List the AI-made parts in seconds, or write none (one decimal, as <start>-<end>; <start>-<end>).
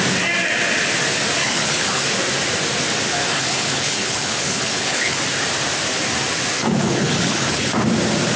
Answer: 1.4-2.1; 3.2-5.2; 6.6-7.7